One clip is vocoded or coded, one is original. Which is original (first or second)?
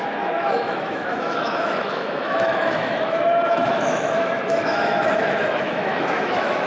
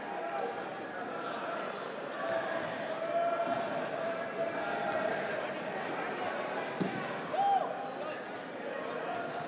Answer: second